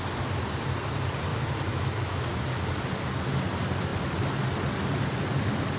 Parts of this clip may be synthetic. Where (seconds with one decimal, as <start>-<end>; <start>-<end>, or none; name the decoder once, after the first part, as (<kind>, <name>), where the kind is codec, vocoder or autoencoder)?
1.3-2.3 (autoencoder, DAC-VAE)

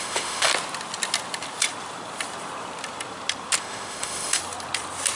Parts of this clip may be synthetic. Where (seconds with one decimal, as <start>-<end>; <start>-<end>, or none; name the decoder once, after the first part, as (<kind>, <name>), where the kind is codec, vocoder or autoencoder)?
0.0-0.5 (autoencoder, DAC-VAE); 3.6-4.4

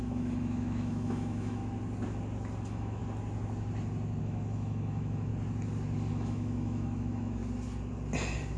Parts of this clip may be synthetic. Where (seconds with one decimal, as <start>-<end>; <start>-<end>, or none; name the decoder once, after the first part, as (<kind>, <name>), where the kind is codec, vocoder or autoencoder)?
0.0-1.6 (autoencoder, DAC-VAE); 2.6-3.0; 4.2-5.3; 6.1-7.4

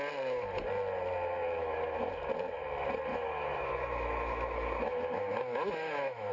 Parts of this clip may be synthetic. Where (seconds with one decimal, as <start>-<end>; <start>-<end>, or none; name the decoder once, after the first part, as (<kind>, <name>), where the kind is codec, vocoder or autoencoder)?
1.6-2.1 (autoencoder, DAC-VAE); 3.1-6.3

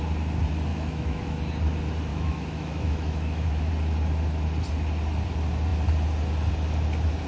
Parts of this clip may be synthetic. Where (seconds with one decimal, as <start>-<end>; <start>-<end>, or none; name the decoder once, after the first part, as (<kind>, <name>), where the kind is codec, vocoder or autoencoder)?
0.7-1.4 (autoencoder, DAC-VAE); 2.1-3.7

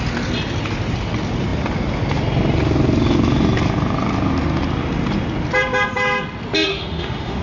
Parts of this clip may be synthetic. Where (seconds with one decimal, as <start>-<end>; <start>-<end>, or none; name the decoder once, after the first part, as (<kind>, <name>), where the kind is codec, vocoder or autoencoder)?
6.7-7.4 (autoencoder, DAC-VAE)

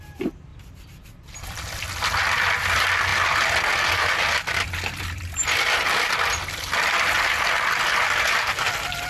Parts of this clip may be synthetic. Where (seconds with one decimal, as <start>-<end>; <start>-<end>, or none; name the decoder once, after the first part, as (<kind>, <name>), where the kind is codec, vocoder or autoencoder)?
none